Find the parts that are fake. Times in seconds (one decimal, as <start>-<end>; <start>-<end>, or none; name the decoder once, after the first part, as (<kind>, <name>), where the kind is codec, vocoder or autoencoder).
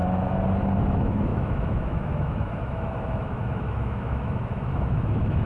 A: 0.8-5.5 (autoencoder, DAC-VAE)